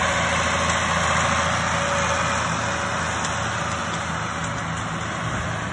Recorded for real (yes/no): yes